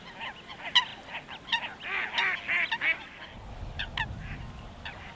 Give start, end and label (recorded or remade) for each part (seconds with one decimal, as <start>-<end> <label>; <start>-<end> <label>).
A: 0.0-5.2 recorded